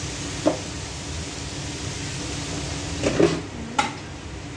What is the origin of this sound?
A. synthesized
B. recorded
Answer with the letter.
B